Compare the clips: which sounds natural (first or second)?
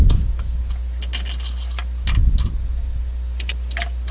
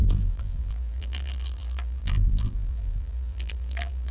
first